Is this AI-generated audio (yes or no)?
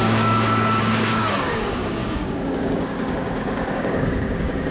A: yes